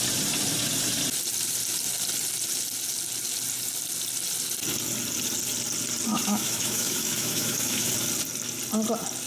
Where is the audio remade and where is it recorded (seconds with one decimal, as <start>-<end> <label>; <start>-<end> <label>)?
0.0-6.1 recorded; 6.1-7.9 remade; 7.9-9.3 recorded